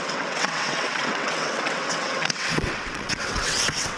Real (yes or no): no